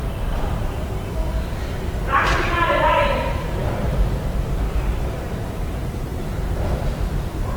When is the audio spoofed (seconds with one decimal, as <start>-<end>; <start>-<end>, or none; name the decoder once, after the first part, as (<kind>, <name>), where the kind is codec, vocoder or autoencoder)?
0.0-7.6 (vocoder, BigVGAN v2)